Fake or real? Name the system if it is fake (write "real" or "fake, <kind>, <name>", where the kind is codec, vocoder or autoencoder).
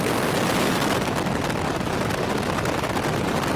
real